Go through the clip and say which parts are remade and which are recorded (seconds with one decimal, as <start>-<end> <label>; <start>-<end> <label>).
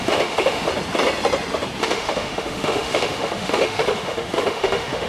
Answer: 0.0-0.7 remade; 0.7-1.8 recorded; 1.8-5.1 remade